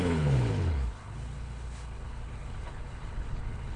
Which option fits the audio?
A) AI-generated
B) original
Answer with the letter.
A